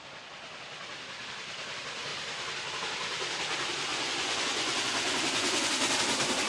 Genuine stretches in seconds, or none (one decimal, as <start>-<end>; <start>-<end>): 0.0-3.9; 5.7-6.5